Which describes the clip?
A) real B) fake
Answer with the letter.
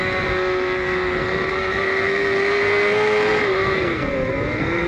B